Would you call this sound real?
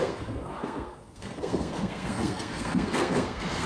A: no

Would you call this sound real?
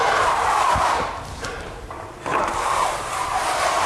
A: no